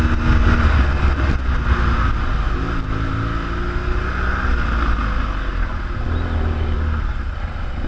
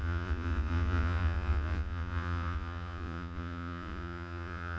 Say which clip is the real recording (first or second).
first